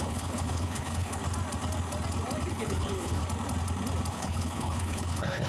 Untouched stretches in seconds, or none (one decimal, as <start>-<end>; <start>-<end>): 1.2-2.5; 3.2-4.1